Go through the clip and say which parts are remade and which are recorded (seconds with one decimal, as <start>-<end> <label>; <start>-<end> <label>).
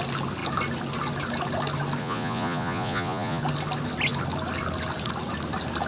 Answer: 0.0-2.0 recorded; 2.0-3.4 remade; 3.4-5.9 recorded